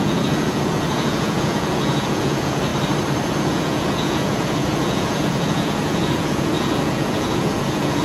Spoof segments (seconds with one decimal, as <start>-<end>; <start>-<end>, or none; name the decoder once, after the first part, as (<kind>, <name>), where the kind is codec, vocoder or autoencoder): 0.0-2.7 (vocoder, Vocos); 3.4-8.0